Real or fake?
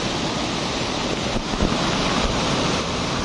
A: real